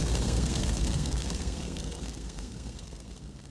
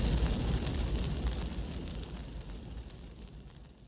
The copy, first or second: first